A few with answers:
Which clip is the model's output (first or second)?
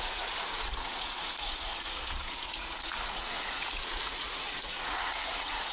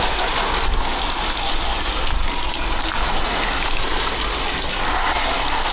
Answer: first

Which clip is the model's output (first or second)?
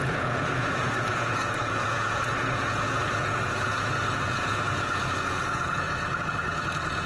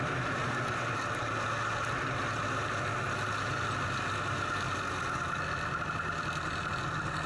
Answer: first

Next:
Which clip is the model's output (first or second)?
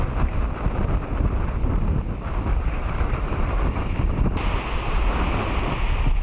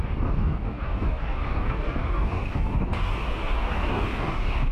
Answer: second